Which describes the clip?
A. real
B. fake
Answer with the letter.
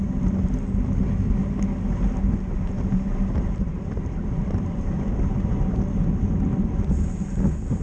A